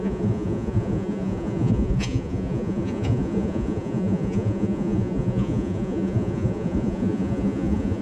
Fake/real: fake